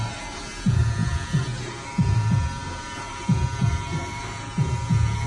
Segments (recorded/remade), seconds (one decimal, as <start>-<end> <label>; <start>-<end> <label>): 0.0-5.3 remade